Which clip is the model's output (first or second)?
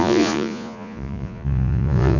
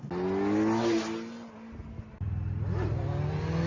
first